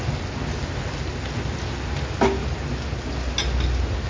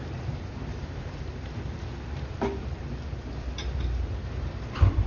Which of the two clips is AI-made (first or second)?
second